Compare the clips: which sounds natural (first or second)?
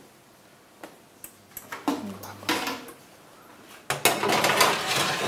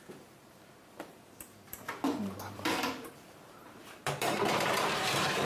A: first